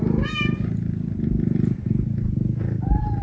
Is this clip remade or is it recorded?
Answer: recorded